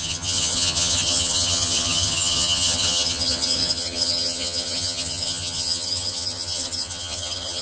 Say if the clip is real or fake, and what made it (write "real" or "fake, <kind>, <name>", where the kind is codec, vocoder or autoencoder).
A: fake, vocoder, HiFi-GAN